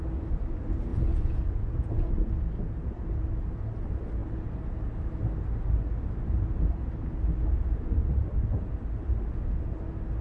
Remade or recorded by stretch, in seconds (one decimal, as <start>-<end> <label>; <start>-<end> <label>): 0.0-0.9 recorded; 0.9-2.1 remade; 2.1-10.2 recorded

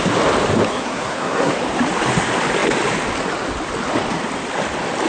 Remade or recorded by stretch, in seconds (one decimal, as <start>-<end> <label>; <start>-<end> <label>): 0.0-0.7 recorded; 0.7-1.6 remade; 1.6-5.1 recorded

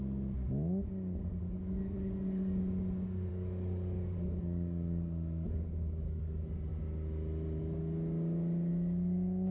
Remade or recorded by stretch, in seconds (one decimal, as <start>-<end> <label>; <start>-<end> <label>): 0.0-1.4 recorded; 1.4-2.6 remade; 2.6-3.3 recorded; 3.3-6.2 remade; 6.2-9.5 recorded

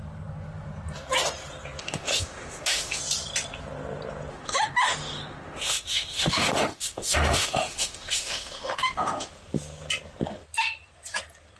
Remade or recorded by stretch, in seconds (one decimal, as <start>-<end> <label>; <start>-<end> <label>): 0.0-1.8 recorded; 1.8-3.0 remade; 3.0-4.3 recorded; 4.3-9.3 remade; 9.3-11.6 recorded

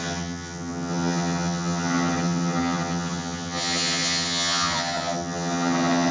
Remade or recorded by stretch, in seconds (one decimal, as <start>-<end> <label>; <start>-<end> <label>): 0.0-6.1 remade